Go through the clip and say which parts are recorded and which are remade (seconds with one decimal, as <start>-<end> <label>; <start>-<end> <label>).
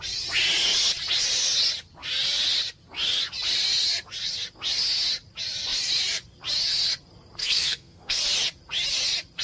0.0-7.4 recorded; 7.4-8.2 remade; 8.2-9.4 recorded